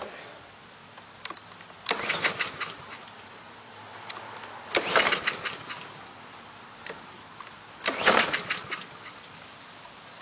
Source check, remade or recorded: remade